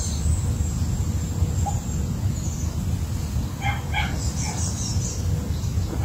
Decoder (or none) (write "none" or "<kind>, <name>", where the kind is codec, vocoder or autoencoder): none